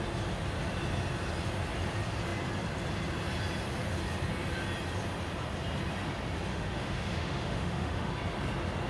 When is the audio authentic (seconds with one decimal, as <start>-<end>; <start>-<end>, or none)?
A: 0.0-6.5; 8.1-8.9